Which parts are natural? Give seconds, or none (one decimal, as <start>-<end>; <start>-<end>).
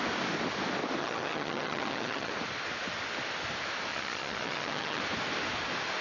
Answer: 0.0-1.0; 2.3-3.9; 5.0-6.0